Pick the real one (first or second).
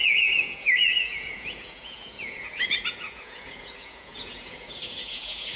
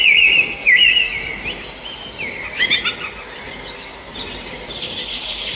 second